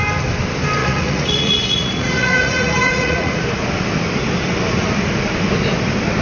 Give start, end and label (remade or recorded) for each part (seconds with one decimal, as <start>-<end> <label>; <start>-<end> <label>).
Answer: 0.0-0.8 recorded; 0.8-3.4 remade; 3.4-6.2 recorded